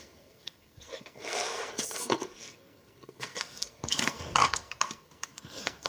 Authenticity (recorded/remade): remade